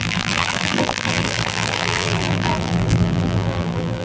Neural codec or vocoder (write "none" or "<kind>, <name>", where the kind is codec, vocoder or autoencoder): vocoder, BigVGAN v2